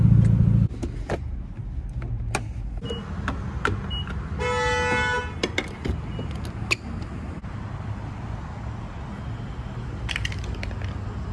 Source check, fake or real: real